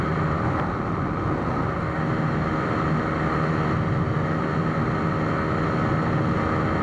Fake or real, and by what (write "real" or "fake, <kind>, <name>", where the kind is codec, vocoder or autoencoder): real